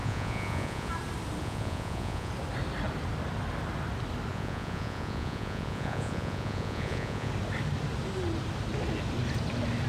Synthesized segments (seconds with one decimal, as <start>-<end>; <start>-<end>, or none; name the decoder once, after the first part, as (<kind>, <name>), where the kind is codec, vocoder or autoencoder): 0.0-0.9 (vocoder, Vocos); 1.4-2.3; 4.3-7.3

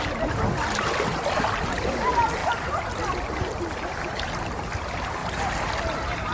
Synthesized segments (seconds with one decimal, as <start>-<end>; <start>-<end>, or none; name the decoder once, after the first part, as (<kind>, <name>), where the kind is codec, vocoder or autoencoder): none

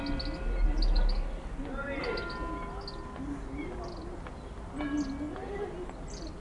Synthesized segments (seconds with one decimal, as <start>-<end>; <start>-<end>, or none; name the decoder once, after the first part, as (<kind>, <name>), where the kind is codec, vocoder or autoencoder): none

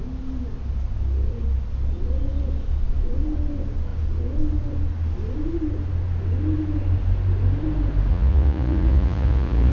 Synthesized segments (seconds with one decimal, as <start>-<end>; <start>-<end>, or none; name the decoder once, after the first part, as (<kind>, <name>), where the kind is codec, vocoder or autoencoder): 8.1-9.7 (vocoder, Vocos)